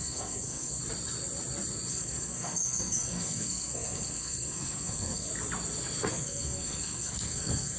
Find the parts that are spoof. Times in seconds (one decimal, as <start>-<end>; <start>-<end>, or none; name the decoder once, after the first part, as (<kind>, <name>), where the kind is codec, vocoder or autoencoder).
0.0-0.8 (codec, SNAC); 1.9-5.3; 6.1-7.8